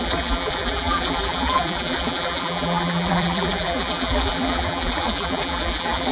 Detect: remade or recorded remade